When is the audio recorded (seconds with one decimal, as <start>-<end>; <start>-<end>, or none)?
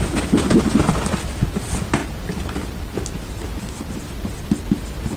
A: 0.0-5.2